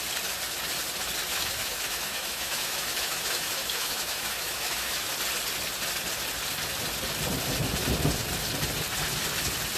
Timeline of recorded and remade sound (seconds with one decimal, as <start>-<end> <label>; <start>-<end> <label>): 0.0-1.3 recorded; 1.3-5.1 remade; 5.1-9.8 recorded